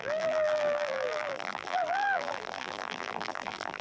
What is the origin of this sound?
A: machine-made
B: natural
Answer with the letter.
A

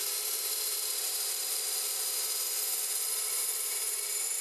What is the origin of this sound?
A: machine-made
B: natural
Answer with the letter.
A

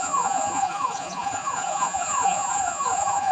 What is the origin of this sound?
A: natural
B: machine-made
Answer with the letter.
B